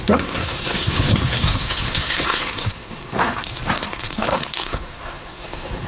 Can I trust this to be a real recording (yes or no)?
no